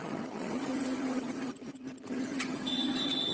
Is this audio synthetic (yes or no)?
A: yes